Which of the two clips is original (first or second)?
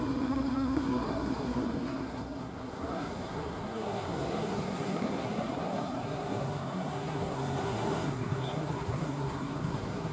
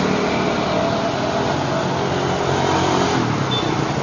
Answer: second